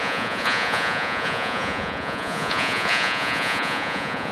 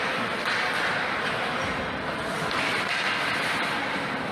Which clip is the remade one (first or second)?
first